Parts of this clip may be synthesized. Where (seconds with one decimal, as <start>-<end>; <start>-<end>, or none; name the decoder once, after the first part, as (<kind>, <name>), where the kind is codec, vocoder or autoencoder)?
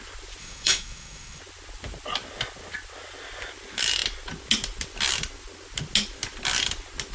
0.4-1.4 (autoencoder, DAC-VAE)